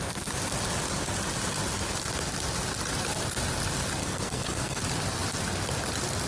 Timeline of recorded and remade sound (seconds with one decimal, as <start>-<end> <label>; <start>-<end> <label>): 0.0-4.0 recorded; 4.0-4.8 remade; 4.8-6.3 recorded